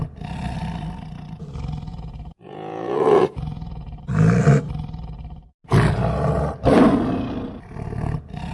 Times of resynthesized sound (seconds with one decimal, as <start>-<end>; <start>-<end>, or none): 1.9-4.0